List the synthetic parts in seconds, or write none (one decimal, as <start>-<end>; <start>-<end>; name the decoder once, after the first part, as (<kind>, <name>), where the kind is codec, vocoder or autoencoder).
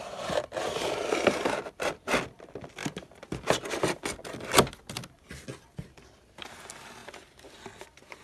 none